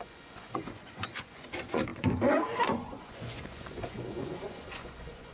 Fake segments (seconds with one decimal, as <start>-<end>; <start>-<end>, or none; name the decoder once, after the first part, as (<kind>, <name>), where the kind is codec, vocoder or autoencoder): 0.0-5.3 (vocoder, Vocos)